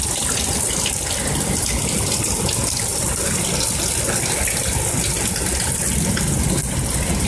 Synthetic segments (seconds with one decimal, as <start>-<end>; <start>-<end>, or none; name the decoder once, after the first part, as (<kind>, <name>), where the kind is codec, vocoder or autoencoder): none